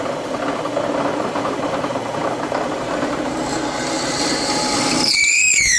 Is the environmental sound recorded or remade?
remade